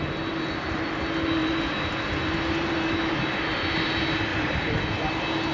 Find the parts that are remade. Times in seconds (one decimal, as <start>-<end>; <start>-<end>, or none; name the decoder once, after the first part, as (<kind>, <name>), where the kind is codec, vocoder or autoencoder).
1.4-3.2 (vocoder, BigVGAN v2); 4.3-4.8